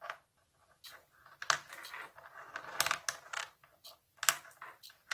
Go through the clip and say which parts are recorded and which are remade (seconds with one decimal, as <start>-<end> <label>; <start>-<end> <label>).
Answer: 0.0-0.6 recorded; 0.6-1.1 remade; 1.1-5.1 recorded